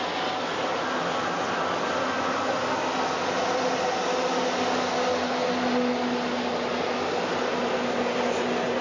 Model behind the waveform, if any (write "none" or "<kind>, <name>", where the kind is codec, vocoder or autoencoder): none